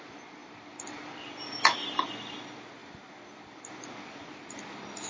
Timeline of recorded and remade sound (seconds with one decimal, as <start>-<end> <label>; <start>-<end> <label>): 0.0-0.4 recorded; 0.4-2.1 remade; 2.1-2.8 recorded; 2.8-4.6 remade; 4.6-5.1 recorded